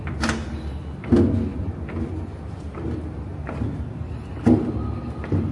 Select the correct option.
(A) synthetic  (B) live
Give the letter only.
B